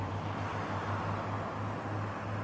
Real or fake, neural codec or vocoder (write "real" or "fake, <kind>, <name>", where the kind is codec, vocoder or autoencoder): real